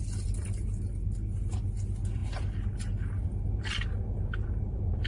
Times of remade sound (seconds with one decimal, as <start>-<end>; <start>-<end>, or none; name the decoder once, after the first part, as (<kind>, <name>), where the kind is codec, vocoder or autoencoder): none